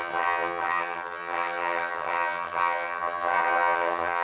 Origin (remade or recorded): remade